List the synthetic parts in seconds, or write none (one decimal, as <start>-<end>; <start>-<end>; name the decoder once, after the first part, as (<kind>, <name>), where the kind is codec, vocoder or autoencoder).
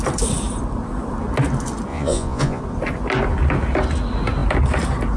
1.9-2.6 (vocoder, Vocos)